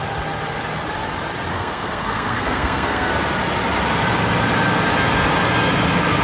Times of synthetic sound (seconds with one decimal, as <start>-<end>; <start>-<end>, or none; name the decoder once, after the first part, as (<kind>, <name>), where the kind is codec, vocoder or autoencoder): 1.5-3.1 (codec, SNAC)